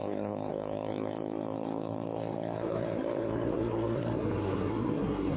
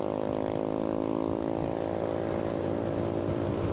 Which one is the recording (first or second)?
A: second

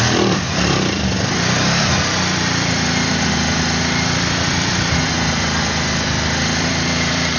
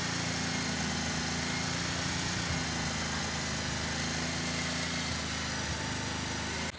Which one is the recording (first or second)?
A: second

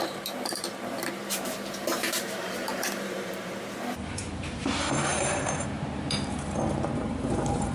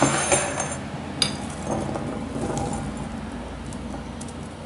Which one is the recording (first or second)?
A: second